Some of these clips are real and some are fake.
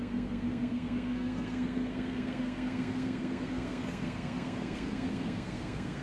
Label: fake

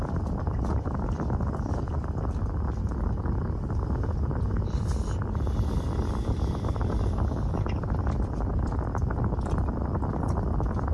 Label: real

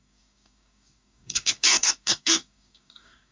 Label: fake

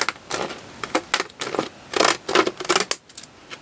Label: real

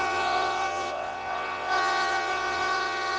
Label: fake